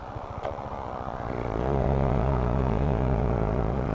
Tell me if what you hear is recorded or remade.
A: remade